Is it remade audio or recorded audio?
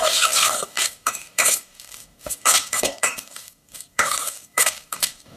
remade